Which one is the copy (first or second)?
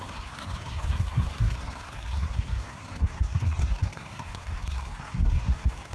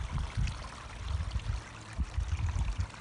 first